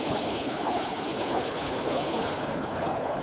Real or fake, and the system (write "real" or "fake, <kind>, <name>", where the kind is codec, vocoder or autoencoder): fake, codec, HILCodec